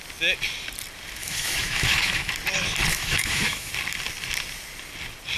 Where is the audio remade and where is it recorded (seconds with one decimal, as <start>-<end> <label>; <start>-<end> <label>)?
0.0-1.2 recorded; 1.2-2.3 remade; 2.3-2.9 recorded; 2.9-3.7 remade; 3.7-5.4 recorded